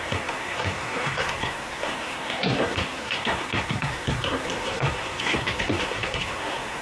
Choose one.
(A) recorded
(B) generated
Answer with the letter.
B